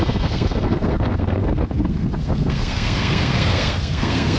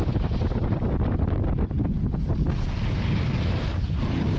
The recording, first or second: second